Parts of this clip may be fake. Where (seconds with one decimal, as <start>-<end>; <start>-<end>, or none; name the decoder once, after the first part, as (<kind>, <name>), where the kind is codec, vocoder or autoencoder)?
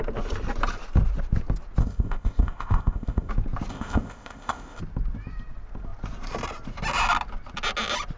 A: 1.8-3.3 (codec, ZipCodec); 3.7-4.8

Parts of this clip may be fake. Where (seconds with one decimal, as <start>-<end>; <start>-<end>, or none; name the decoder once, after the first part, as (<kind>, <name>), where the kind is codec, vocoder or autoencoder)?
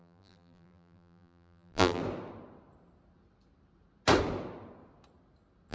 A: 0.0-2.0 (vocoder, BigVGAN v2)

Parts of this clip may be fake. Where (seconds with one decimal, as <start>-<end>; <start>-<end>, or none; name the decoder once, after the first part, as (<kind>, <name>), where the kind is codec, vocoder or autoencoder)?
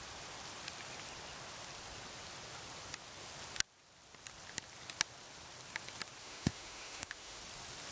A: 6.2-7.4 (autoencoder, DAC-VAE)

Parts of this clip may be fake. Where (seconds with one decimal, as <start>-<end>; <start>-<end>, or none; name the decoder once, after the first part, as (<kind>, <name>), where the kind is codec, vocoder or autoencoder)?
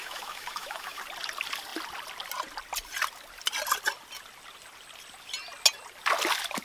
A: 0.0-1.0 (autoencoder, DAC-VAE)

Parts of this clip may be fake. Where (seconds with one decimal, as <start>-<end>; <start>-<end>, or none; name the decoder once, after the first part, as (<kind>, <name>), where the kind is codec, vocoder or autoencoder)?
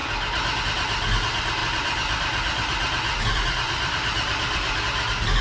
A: 1.6-4.8 (vocoder, BigVGAN v2)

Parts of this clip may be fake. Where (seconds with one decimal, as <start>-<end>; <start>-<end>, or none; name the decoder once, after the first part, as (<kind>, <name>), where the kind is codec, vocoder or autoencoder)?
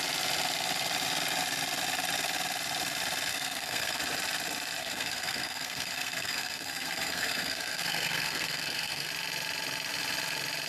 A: 3.3-4.0 (codec, SNAC); 4.8-9.1